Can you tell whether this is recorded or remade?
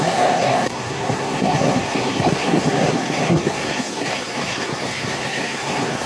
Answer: remade